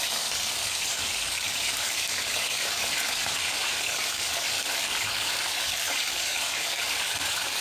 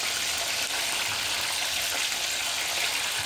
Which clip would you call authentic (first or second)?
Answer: second